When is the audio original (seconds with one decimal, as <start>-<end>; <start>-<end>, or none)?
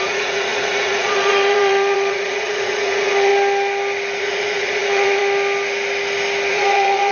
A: 3.3-4.2; 5.2-6.5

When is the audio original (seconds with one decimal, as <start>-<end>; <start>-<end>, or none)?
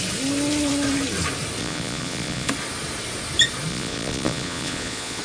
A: 0.0-1.6; 2.5-3.7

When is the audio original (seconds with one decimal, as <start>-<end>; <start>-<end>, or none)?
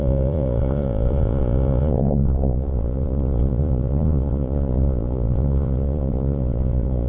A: none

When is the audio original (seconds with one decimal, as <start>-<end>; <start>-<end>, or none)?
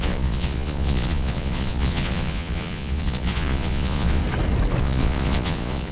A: 4.2-4.8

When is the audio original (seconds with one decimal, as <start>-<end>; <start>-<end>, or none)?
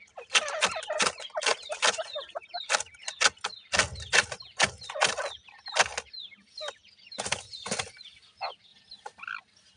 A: 0.0-9.8